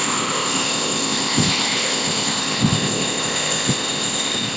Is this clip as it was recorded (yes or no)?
no